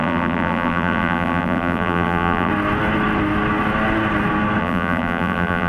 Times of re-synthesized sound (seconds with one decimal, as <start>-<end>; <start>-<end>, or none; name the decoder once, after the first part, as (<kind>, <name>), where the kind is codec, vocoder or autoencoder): 0.0-2.5 (vocoder, BigVGAN v2); 4.6-5.7